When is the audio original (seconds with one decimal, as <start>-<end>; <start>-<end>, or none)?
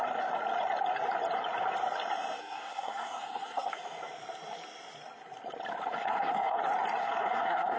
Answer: 0.0-2.4; 3.7-6.0; 6.6-7.0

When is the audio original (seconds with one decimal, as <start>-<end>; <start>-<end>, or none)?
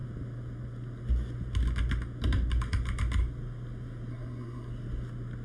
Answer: 0.0-4.1; 4.7-5.4